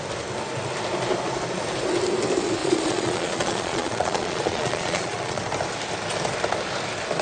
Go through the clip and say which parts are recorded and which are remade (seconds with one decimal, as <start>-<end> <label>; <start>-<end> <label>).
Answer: 0.0-2.6 recorded; 2.6-5.4 remade; 5.4-7.2 recorded